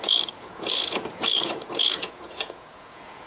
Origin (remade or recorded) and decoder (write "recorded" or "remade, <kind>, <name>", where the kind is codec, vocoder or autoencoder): remade, vocoder, Vocos